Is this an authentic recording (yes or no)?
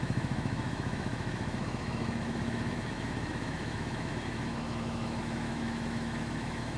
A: no